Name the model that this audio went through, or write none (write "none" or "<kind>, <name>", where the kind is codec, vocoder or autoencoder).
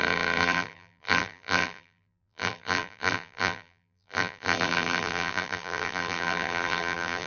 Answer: vocoder, BigVGAN v2